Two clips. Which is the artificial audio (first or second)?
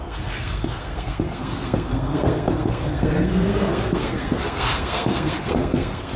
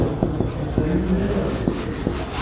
first